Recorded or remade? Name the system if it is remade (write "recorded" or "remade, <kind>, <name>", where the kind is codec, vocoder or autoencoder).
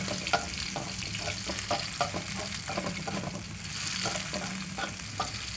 recorded